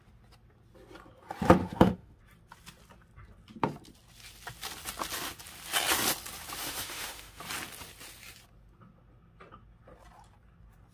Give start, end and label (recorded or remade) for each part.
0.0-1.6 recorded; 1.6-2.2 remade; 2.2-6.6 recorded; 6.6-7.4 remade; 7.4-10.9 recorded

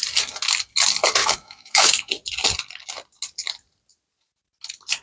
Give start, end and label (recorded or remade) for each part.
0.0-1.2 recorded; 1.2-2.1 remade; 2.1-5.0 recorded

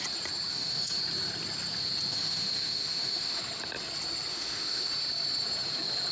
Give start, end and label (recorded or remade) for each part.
0.0-0.5 recorded; 0.5-1.0 remade; 1.0-2.1 recorded; 2.1-3.4 remade; 3.4-4.3 recorded; 4.3-4.9 remade; 4.9-6.1 recorded